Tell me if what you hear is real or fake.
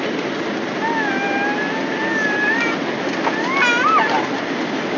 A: real